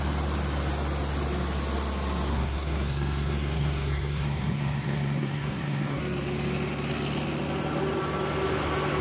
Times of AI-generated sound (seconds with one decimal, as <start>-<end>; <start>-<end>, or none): 2.3-6.0